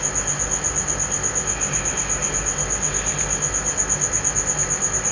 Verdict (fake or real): real